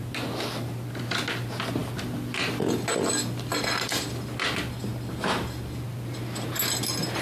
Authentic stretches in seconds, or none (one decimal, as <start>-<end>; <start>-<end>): 0.0-1.8; 2.9-7.2